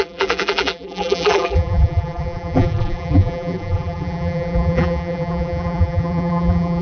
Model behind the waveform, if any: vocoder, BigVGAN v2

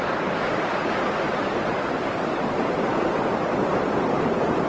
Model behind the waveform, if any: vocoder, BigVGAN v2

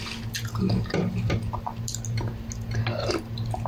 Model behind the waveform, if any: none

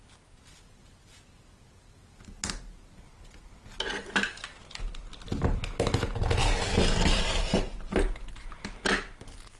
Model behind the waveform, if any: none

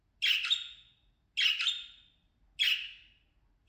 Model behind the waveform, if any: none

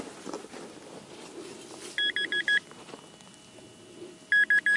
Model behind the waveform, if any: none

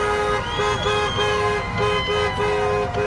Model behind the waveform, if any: none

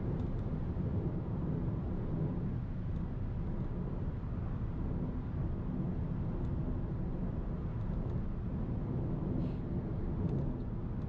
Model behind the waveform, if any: none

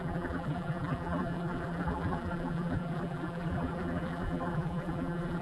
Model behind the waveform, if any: vocoder, BigVGAN v2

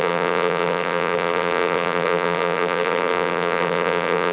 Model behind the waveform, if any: vocoder, BigVGAN v2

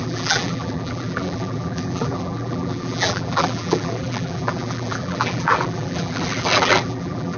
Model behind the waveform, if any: vocoder, BigVGAN v2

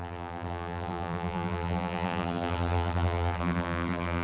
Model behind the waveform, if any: vocoder, BigVGAN v2